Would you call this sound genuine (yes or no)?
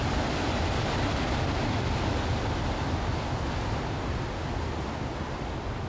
yes